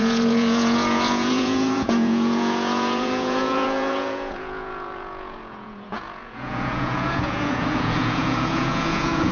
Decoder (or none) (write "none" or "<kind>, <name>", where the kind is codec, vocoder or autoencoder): vocoder, Vocos